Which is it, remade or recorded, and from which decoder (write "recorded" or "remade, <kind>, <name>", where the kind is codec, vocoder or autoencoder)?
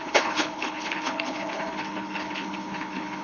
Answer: remade, codec, HILCodec